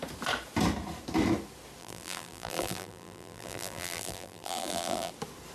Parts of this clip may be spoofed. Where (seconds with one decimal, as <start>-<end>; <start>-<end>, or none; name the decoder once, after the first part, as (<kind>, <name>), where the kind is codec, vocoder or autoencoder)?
1.8-5.1 (vocoder, BigVGAN v2)

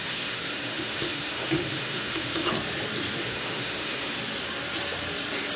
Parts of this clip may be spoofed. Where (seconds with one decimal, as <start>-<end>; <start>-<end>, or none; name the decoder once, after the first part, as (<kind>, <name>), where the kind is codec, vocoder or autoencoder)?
0.0-2.5 (autoencoder, DAC-VAE); 3.2-4.2

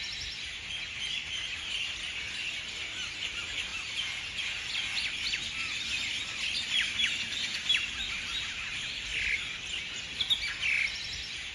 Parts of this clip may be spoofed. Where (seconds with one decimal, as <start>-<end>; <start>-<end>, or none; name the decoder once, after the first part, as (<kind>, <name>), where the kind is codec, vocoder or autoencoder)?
3.7-4.7 (vocoder, BigVGAN v2)

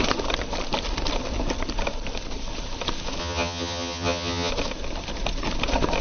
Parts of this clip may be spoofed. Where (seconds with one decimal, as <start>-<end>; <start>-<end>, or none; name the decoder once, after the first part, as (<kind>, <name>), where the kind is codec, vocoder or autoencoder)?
3.2-4.5 (vocoder, HiFi-GAN)